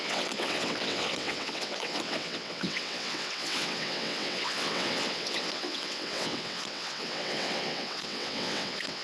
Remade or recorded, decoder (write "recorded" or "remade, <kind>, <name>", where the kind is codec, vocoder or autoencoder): remade, vocoder, WaveNeXt